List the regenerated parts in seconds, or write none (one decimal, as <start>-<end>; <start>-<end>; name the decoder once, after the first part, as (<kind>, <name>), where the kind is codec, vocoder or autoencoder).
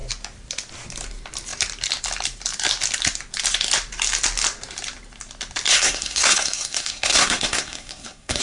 5.7-8.4 (codec, SNAC)